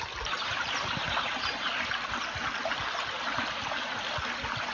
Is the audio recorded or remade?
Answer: recorded